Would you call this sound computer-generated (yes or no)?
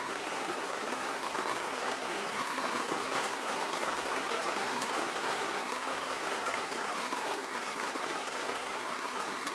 yes